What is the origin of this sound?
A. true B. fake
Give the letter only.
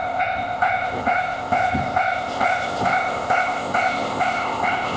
B